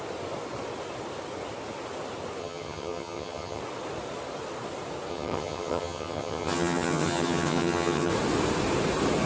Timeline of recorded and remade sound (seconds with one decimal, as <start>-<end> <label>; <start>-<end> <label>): 0.0-2.4 recorded; 2.4-3.6 remade; 3.6-5.1 recorded; 5.1-8.1 remade; 8.1-9.3 recorded